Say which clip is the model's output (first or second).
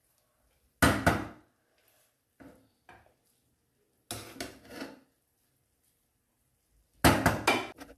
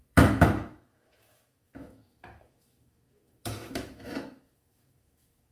second